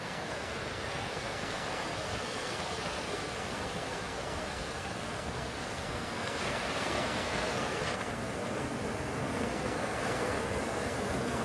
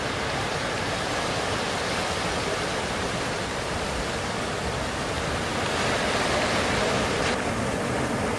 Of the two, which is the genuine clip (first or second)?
second